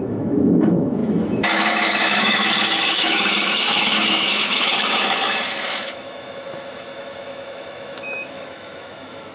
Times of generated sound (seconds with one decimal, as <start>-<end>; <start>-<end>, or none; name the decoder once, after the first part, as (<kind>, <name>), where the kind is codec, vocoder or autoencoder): 0.0-9.3 (autoencoder, DAC-VAE)